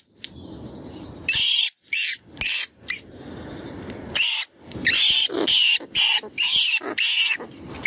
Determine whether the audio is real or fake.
real